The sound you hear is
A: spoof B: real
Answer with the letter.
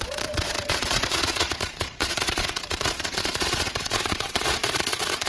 A